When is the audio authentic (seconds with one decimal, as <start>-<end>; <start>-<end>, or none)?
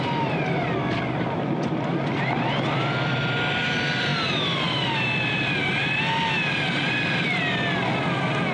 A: 0.0-8.5